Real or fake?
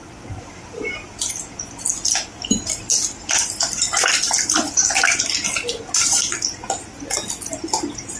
real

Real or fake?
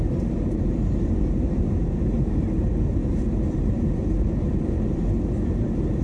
fake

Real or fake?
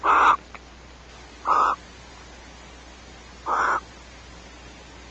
real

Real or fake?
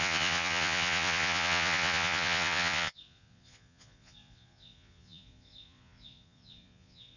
fake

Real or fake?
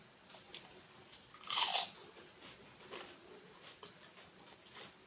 real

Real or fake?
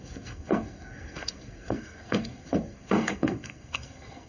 fake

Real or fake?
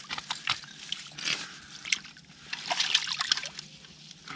real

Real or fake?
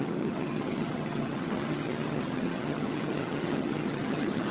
fake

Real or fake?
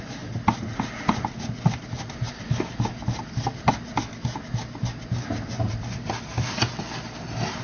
real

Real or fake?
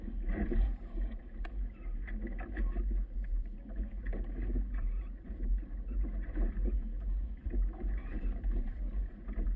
fake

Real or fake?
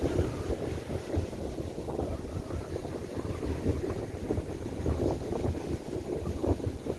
real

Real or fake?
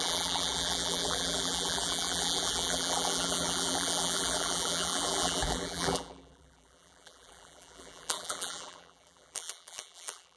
fake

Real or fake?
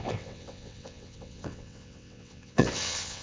fake